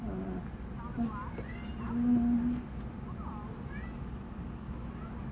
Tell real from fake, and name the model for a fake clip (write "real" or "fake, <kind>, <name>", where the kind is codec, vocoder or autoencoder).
real